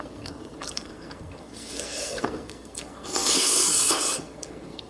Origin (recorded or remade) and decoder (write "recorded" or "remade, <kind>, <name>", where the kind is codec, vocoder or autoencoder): remade, codec, SNAC